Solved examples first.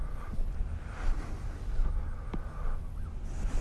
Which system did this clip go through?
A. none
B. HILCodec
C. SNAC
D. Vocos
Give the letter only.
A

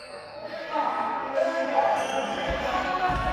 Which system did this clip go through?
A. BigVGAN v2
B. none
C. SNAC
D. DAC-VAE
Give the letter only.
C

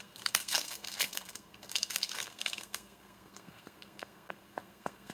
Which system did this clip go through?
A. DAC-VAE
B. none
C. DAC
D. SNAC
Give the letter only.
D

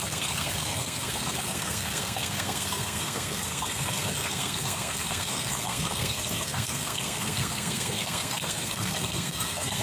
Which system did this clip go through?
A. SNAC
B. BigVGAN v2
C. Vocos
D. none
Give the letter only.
A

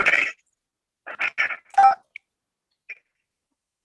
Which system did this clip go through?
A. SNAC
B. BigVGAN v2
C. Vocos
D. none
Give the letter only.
D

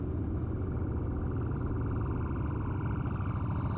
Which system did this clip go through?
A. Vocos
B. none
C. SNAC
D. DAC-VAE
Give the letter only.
B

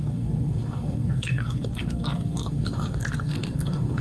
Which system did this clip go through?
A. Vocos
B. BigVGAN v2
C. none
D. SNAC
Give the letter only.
D